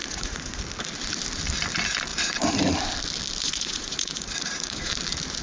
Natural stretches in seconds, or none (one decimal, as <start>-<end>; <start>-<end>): 0.6-3.4; 4.9-5.4